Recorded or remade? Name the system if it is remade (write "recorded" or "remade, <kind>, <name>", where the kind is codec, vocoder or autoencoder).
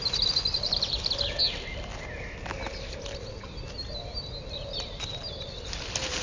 recorded